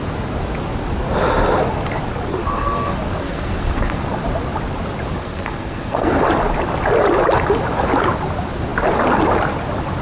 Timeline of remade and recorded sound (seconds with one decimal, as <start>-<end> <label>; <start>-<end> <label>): 0.0-2.4 recorded; 2.4-4.1 remade; 4.1-5.2 recorded; 5.2-6.2 remade; 6.2-10.0 recorded

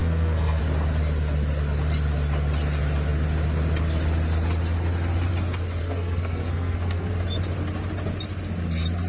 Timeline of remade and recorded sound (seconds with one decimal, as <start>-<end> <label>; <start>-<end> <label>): 0.0-0.6 remade; 0.6-5.8 recorded; 5.8-7.1 remade; 7.1-9.1 recorded

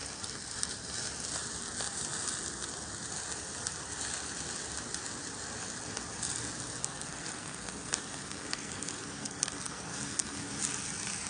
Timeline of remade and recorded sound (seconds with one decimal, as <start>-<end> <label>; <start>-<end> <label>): 0.0-6.8 recorded; 6.8-10.5 remade; 10.5-11.3 recorded

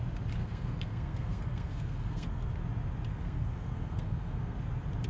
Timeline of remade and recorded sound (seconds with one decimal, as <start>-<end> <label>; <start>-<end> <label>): 0.0-0.4 recorded; 0.4-2.5 remade; 2.5-3.1 recorded; 3.1-4.6 remade; 4.6-5.1 recorded

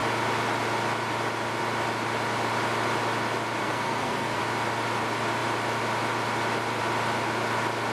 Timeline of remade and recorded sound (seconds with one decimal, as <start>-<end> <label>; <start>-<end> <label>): 0.0-3.6 recorded; 3.6-4.4 remade; 4.4-7.9 recorded